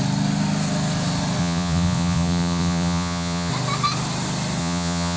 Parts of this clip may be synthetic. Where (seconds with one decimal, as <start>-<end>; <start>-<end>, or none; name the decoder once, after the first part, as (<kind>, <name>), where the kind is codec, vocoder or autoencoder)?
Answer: 1.4-3.5 (vocoder, Vocos); 4.6-5.2